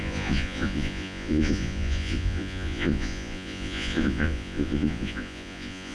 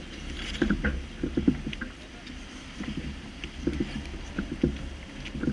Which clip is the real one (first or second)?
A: second